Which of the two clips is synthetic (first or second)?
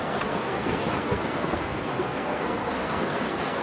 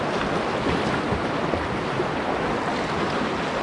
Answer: first